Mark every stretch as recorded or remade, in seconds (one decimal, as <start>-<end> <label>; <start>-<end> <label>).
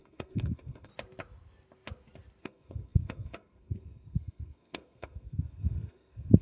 0.0-0.9 remade; 0.9-2.4 recorded; 2.4-6.4 remade